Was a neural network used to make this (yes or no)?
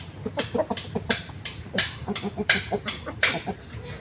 yes